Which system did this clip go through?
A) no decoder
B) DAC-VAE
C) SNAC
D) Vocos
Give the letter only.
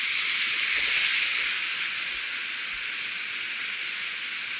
A